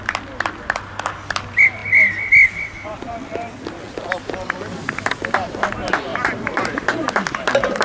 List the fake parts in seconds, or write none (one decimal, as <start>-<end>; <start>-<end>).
6.1-7.1